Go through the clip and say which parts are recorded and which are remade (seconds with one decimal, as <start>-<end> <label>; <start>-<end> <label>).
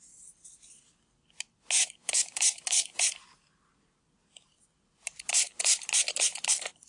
0.0-1.8 recorded; 1.8-3.0 remade; 3.0-6.9 recorded